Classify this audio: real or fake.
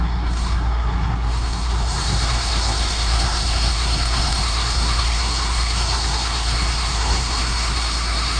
fake